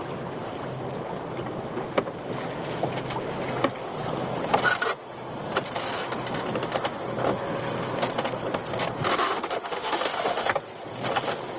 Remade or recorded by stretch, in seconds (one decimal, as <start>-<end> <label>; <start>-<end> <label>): 0.0-9.1 recorded; 9.1-10.5 remade; 10.5-11.6 recorded